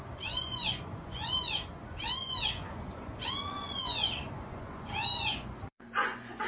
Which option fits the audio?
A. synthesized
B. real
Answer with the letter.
A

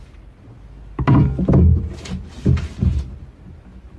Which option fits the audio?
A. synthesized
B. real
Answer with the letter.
B